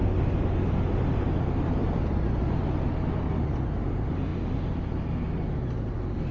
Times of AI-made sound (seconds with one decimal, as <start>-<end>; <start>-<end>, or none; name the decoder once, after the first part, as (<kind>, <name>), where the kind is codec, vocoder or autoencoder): none